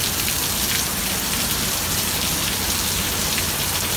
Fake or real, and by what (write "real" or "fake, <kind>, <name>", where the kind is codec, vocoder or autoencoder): real